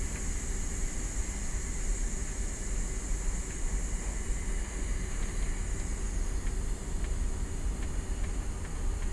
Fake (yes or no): no